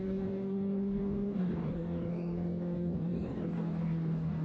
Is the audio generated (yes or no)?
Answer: yes